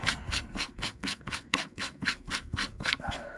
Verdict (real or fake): fake